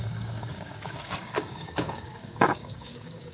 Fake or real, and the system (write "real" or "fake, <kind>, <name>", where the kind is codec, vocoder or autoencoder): fake, codec, DAC